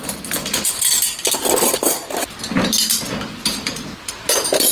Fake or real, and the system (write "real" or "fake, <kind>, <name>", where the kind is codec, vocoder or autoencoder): real